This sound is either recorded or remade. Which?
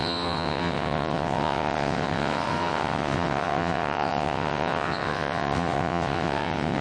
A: remade